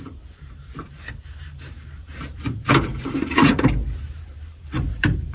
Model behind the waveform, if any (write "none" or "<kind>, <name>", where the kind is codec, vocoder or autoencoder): vocoder, BigVGAN v2